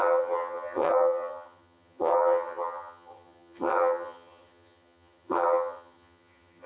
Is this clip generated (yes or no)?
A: yes